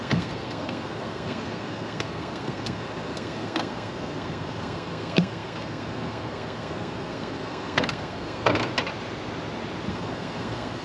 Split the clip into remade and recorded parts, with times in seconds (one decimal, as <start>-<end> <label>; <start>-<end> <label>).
0.0-8.7 remade; 8.7-9.9 recorded; 9.9-10.8 remade